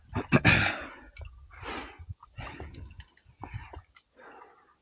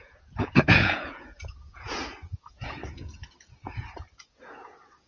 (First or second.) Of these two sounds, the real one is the first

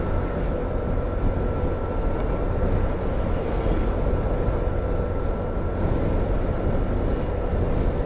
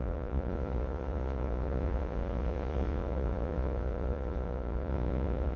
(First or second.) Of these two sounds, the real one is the first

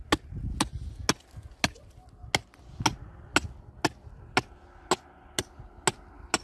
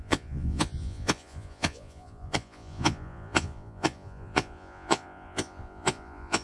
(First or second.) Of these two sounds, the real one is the first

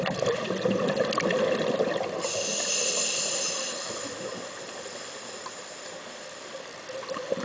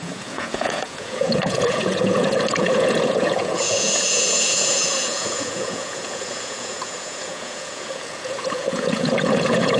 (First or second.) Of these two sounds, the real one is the first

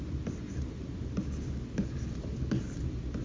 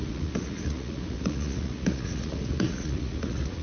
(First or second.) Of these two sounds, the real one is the first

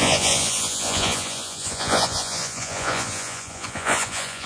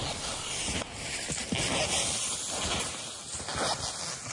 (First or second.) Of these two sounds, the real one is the second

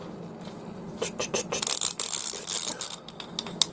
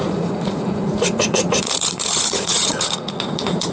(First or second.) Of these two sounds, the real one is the first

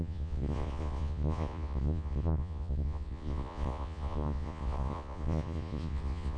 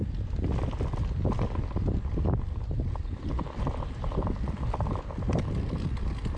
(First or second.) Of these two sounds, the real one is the second